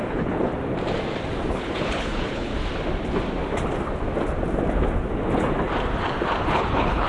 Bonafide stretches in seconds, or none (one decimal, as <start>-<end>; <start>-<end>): 0.5-1.5; 2.5-6.4